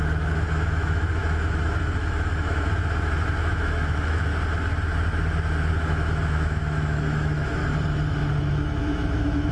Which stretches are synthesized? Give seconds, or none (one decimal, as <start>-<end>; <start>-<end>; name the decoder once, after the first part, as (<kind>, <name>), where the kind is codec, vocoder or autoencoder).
0.0-4.3 (autoencoder, DAC-VAE); 5.7-7.6; 8.4-9.5